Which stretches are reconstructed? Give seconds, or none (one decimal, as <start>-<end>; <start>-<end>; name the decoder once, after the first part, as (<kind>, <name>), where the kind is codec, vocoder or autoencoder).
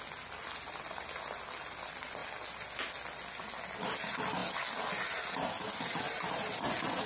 none